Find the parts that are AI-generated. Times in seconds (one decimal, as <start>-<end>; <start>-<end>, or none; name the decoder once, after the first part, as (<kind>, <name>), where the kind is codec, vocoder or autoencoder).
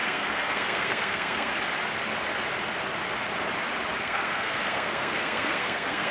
0.0-1.5 (codec, SNAC); 4.0-6.1